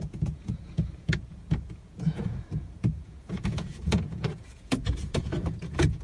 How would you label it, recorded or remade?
remade